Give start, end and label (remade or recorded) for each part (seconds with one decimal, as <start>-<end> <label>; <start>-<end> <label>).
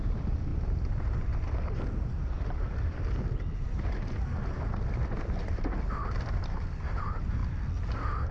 0.0-0.5 remade; 0.5-3.6 recorded; 3.6-7.4 remade; 7.4-8.3 recorded